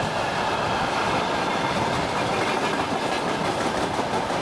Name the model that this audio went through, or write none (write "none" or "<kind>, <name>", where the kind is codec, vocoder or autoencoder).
none